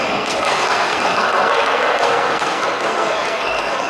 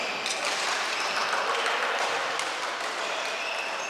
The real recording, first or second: second